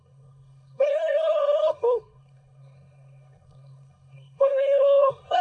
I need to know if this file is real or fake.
fake